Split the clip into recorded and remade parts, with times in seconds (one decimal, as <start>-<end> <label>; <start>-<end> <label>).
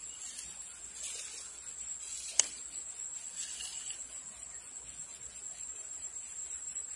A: 0.0-4.0 recorded; 4.0-4.7 remade; 4.7-5.7 recorded; 5.7-7.0 remade